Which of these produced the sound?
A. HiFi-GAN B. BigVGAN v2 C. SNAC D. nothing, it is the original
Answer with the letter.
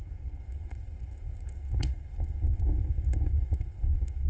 C